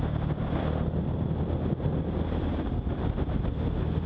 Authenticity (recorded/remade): recorded